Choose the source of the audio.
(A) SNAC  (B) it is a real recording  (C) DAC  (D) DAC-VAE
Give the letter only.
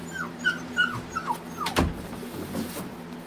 B